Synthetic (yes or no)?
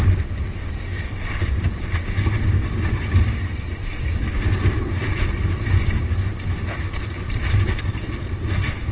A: no